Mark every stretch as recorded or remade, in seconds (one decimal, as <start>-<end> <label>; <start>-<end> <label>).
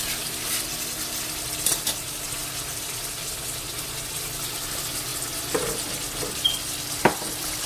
0.0-7.7 recorded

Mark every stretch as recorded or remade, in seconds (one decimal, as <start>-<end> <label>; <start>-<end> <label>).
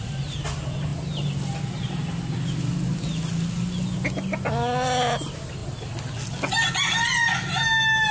0.0-8.1 recorded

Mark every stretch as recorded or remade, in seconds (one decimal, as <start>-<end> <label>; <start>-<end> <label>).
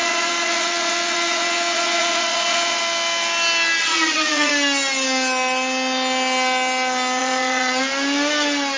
0.0-2.8 remade; 2.8-3.8 recorded; 3.8-4.5 remade; 4.5-7.2 recorded; 7.2-7.8 remade; 7.8-8.8 recorded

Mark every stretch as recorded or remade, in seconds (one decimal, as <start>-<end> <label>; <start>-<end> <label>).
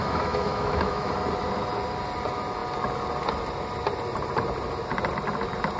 0.0-1.1 remade; 1.1-5.8 recorded